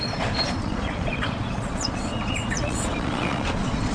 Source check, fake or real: fake